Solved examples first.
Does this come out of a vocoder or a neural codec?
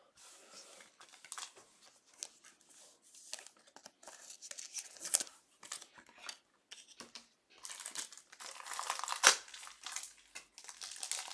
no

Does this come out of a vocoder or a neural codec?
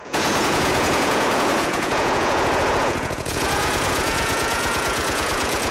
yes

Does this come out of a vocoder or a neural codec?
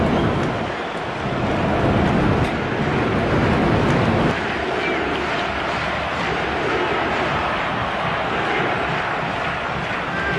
no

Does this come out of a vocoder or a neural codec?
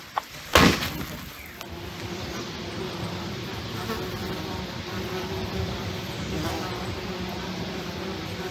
no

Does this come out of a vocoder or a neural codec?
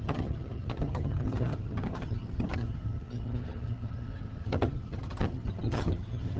yes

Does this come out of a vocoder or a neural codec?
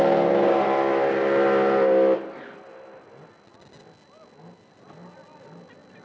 no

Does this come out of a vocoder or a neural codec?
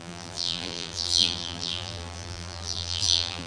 yes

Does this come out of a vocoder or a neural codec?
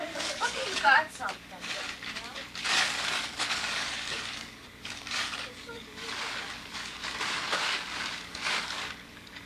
yes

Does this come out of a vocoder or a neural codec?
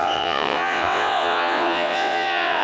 yes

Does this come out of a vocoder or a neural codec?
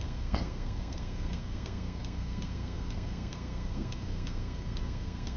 yes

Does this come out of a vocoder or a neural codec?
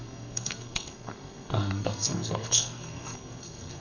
yes